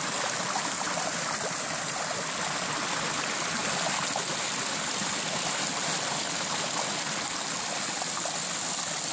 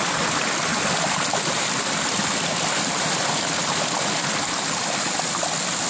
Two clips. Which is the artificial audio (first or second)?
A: second